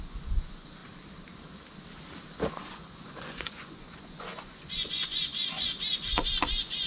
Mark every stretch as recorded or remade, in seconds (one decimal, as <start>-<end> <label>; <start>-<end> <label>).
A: 0.0-0.8 remade; 0.8-2.5 recorded; 2.5-6.9 remade